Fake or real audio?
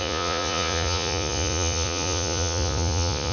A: fake